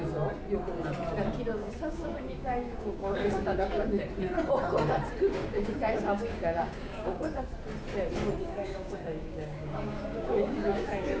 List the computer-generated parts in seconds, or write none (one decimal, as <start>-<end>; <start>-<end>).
1.5-4.0; 5.4-7.4; 8.4-11.2